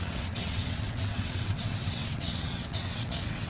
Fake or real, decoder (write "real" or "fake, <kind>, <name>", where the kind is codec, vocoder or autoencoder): fake, vocoder, WaveNeXt